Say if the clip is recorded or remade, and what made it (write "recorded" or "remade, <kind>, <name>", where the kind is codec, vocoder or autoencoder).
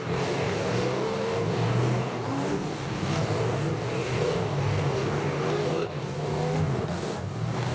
remade, codec, DAC